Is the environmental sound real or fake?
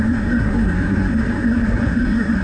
fake